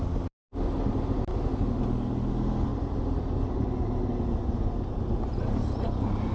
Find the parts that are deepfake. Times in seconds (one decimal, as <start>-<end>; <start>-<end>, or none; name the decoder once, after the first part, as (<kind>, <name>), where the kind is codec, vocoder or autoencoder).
none